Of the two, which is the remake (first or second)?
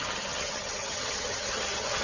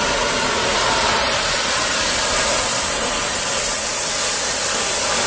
first